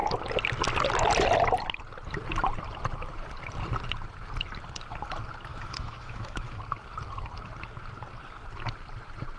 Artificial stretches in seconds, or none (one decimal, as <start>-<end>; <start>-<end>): 5.5-6.6